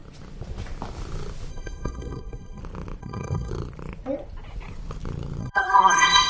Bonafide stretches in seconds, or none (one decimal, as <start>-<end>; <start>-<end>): 0.0-1.5; 2.6-3.0; 3.5-5.4